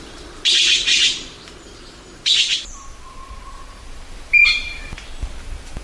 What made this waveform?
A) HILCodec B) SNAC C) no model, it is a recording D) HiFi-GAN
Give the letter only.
C